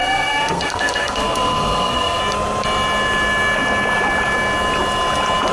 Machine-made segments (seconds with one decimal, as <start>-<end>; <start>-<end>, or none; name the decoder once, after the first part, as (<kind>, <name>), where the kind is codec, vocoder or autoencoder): 0.0-2.2 (codec, SNAC)